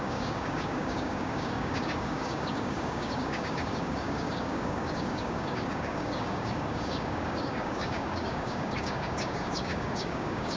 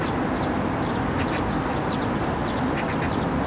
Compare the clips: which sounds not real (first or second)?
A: first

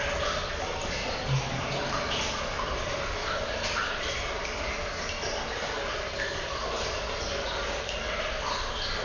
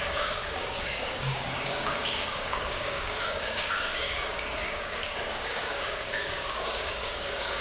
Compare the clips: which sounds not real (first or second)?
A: second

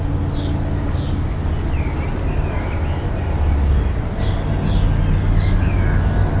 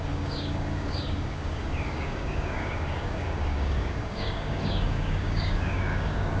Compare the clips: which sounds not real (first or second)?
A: second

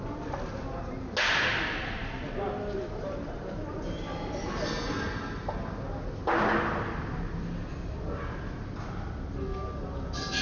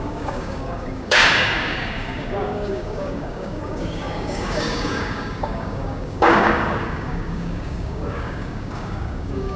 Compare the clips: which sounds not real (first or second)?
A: second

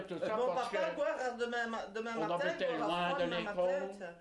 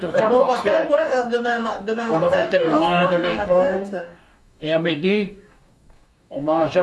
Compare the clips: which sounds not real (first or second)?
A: second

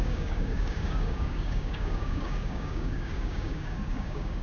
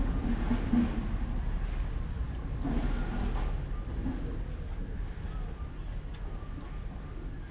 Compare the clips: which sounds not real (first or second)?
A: first